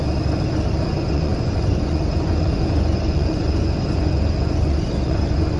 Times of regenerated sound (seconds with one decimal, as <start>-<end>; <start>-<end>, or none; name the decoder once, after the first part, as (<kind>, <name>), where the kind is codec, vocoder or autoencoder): 0.9-5.6 (vocoder, Vocos)